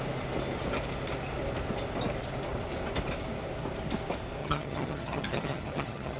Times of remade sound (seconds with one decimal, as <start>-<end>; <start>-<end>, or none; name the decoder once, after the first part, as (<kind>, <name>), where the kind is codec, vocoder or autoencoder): 4.4-6.2 (vocoder, HiFi-GAN)